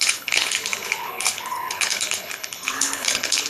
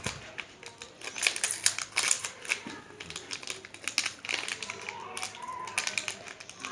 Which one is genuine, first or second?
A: second